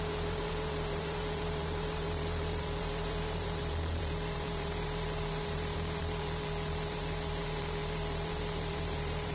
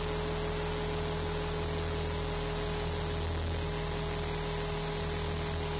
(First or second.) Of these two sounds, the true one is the second